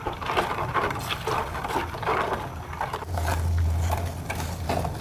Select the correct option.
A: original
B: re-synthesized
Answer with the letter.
A